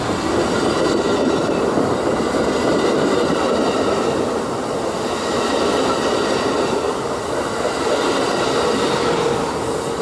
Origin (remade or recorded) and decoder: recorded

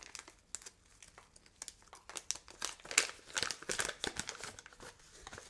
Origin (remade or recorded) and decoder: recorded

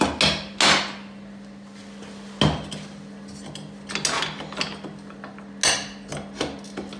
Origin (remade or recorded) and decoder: recorded